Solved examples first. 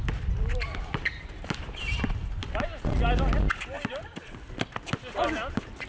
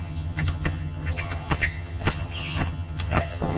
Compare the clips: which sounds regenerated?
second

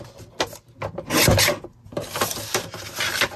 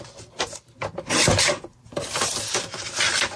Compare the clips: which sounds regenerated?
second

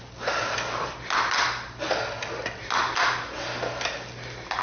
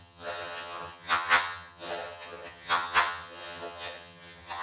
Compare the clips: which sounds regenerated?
second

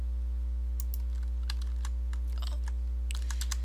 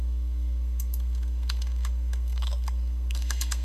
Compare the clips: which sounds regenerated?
second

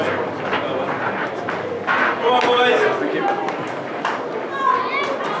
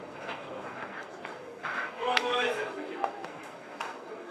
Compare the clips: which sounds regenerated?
second